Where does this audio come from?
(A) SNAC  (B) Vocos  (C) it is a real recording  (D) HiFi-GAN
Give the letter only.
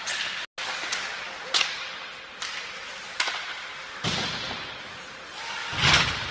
C